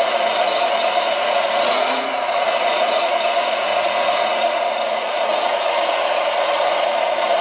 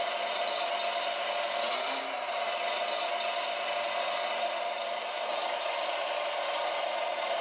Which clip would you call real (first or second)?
second